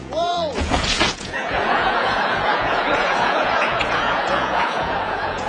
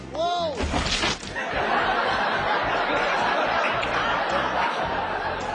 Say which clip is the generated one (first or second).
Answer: first